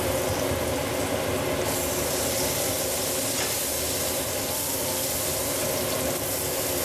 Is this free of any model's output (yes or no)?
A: yes